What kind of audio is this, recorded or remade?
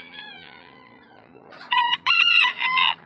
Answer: remade